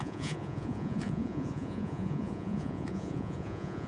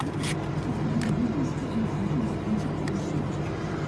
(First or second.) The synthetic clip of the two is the first